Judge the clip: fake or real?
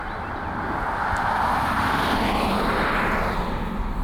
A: real